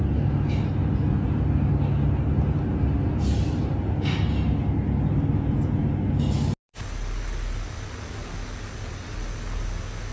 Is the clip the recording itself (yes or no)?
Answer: yes